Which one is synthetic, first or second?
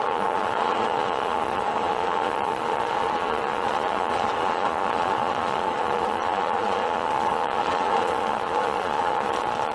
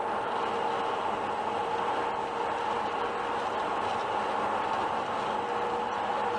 first